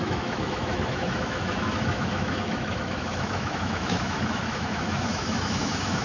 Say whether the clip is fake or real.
fake